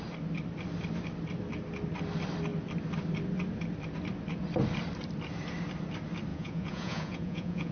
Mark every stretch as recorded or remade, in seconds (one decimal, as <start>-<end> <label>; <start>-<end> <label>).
0.0-6.3 recorded; 6.3-7.7 remade